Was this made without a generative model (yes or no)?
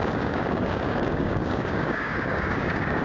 no